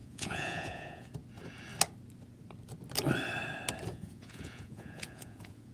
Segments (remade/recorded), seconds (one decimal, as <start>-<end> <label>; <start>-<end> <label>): 0.0-1.1 remade; 1.1-3.9 recorded; 3.9-5.7 remade